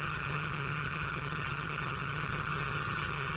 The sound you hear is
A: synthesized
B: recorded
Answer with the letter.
A